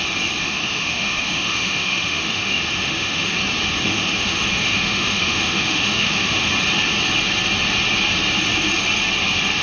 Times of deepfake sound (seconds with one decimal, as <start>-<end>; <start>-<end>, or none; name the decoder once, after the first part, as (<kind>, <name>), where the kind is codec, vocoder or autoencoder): 0.4-3.3 (autoencoder, DAC-VAE); 3.9-6.5